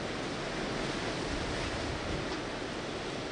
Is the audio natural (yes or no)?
yes